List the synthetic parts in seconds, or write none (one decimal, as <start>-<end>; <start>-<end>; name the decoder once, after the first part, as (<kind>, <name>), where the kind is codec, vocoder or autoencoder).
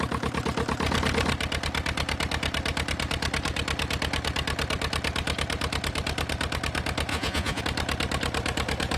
7.1-7.6 (vocoder, Vocos)